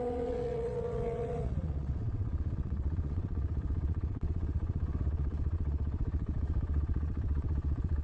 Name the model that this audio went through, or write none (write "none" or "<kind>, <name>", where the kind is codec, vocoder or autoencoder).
vocoder, WaveNeXt